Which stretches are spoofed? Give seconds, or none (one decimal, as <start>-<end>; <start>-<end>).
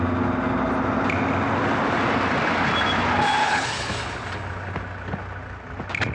3.4-3.9